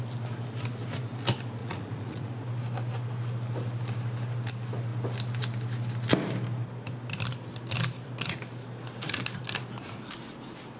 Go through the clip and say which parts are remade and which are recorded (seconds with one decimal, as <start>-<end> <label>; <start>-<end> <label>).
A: 0.0-1.6 recorded; 1.6-2.3 remade; 2.3-10.8 recorded